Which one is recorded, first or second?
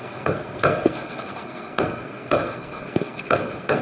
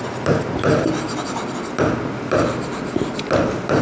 second